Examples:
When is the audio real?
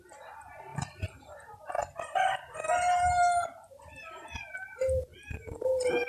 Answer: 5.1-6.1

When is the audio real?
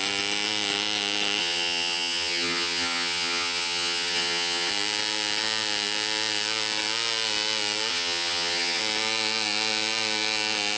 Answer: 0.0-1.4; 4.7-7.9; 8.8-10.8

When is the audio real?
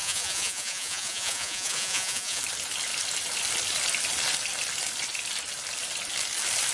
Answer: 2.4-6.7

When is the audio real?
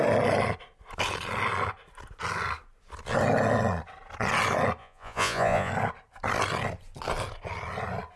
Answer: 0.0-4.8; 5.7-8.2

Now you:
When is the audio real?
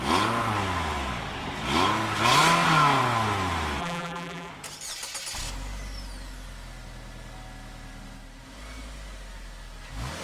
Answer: 0.0-3.8; 4.5-10.2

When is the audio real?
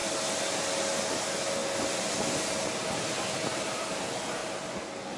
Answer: 0.0-5.2